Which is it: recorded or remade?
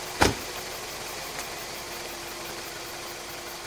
recorded